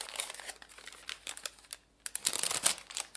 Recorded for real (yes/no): yes